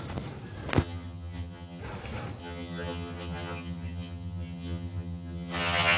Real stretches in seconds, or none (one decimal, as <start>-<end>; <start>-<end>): 0.0-0.8; 1.8-2.4